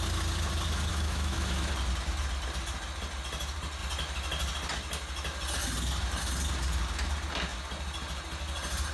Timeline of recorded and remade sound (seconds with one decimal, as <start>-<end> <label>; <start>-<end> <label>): 0.0-0.9 recorded; 0.9-1.7 remade; 1.7-8.9 recorded

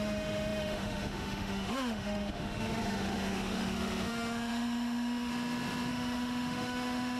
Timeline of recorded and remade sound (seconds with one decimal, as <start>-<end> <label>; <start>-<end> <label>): 0.0-5.3 remade; 5.3-5.9 recorded; 5.9-7.2 remade

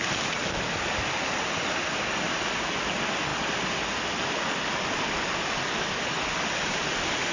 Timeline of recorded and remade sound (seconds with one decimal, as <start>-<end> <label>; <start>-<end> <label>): 0.0-7.3 recorded

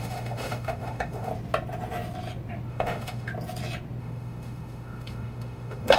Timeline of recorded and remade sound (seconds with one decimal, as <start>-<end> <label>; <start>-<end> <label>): 0.0-1.3 remade; 1.3-2.7 recorded; 2.7-3.3 remade; 3.3-4.0 recorded; 4.0-6.0 remade

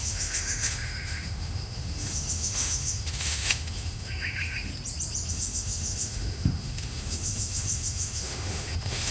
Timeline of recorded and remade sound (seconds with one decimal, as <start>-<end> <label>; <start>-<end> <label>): 0.0-4.7 remade; 4.7-5.3 recorded; 5.3-9.1 remade

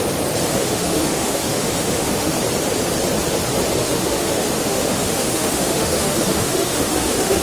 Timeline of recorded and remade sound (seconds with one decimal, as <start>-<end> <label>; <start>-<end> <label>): 0.0-0.5 recorded; 0.5-2.4 remade; 2.4-3.8 recorded; 3.8-7.4 remade

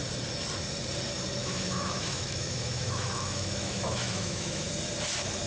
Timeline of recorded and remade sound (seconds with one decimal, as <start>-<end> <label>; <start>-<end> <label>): 0.0-1.4 recorded; 1.4-4.7 remade; 4.7-5.5 recorded